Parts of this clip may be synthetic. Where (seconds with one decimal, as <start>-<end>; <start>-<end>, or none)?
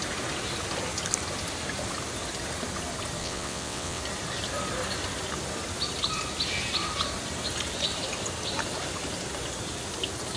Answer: 3.2-4.0